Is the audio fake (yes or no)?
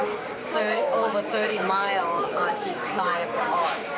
yes